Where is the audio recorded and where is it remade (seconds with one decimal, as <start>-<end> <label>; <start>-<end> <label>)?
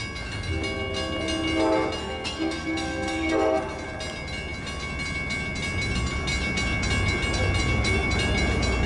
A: 0.0-2.0 recorded; 2.0-3.6 remade; 3.6-8.9 recorded